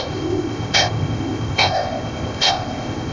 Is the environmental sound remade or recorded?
remade